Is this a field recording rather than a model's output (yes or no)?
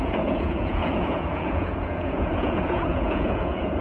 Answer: no